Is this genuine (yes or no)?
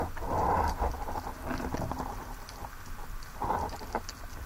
yes